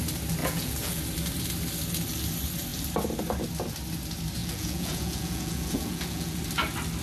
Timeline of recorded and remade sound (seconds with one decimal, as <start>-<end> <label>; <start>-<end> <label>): 0.0-0.4 recorded; 0.4-1.0 remade; 1.0-4.4 recorded; 4.4-6.4 remade; 6.4-7.0 recorded